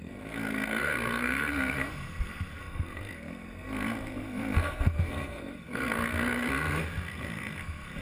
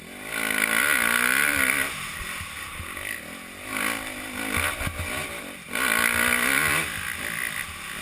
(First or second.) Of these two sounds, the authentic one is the second